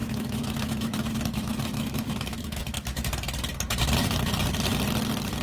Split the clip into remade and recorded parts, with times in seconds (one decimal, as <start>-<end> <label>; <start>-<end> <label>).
0.0-3.1 remade; 3.1-5.4 recorded